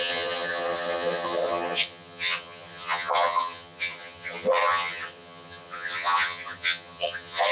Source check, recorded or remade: remade